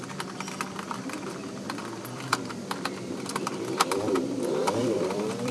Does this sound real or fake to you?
fake